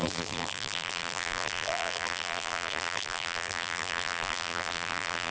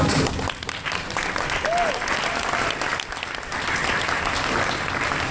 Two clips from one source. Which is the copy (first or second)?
first